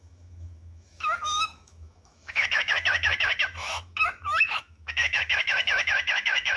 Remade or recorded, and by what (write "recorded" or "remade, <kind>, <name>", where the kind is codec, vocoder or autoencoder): remade, autoencoder, DAC-VAE